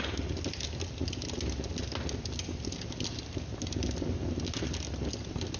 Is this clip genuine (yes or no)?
yes